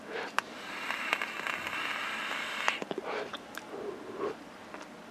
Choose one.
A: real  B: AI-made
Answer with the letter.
A